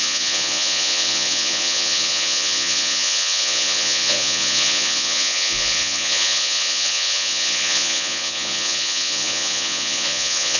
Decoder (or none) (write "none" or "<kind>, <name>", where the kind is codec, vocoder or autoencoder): vocoder, Vocos